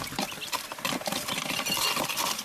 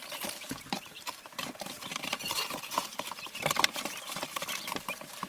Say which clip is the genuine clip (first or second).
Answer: first